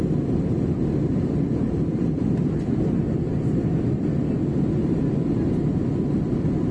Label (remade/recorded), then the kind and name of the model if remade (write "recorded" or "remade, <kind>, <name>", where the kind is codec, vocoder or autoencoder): recorded